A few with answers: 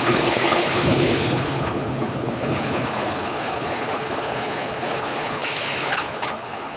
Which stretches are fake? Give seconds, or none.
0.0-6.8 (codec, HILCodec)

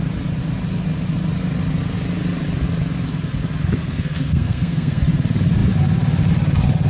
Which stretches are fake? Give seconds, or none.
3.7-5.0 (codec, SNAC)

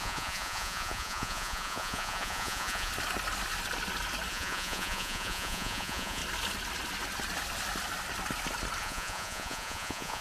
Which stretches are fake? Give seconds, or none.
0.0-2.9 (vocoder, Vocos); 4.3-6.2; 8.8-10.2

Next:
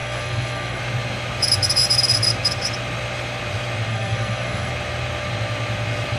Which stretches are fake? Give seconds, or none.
0.0-0.8 (codec, SNAC); 3.9-4.7